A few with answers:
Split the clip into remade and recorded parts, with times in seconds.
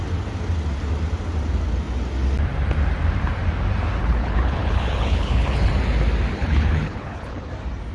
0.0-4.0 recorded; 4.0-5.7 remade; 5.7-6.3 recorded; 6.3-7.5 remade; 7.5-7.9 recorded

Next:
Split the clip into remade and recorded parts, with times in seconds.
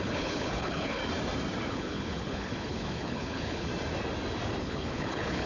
0.0-1.0 remade; 1.0-1.7 recorded; 1.7-3.7 remade; 3.7-4.6 recorded; 4.6-5.5 remade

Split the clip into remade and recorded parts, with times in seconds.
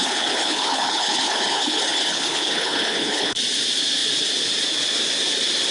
0.0-3.4 remade; 3.4-5.7 recorded